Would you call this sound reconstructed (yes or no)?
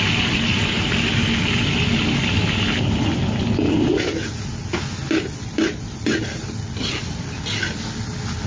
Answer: no